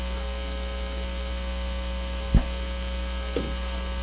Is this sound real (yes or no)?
yes